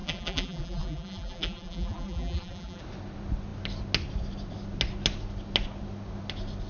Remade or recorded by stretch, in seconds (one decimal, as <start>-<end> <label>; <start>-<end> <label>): 0.0-2.8 remade; 2.8-6.7 recorded